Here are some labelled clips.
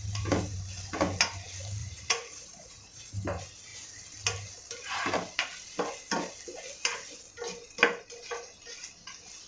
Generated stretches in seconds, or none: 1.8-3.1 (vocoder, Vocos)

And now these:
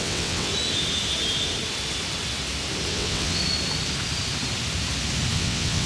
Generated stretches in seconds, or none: 0.0-0.5 (vocoder, WaveNeXt); 2.9-3.4; 5.3-5.9